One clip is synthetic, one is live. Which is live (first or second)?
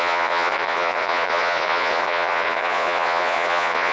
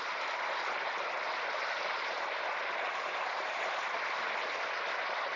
second